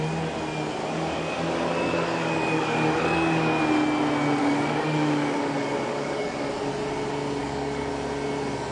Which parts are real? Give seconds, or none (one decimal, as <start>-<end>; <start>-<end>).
0.0-0.8; 3.6-4.4; 6.5-7.4; 7.9-8.7